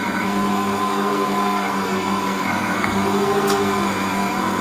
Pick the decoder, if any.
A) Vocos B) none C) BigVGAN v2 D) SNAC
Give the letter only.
D